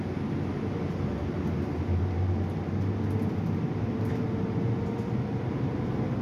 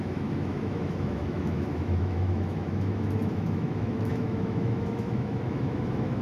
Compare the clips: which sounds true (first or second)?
first